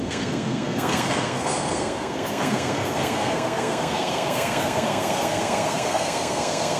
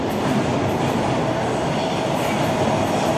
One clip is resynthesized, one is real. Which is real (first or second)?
second